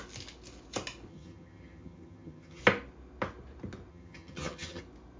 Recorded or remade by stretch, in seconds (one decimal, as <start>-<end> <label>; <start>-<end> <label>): 0.0-1.1 recorded; 1.1-2.6 remade; 2.6-3.9 recorded; 3.9-4.8 remade; 4.8-5.2 recorded